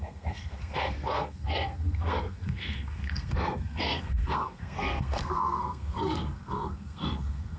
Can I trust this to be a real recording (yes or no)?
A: no